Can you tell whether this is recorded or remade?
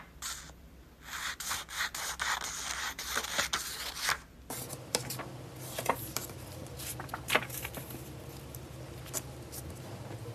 recorded